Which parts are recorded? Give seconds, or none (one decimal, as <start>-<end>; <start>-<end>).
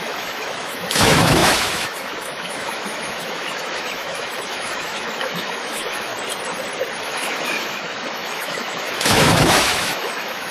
6.1-7.0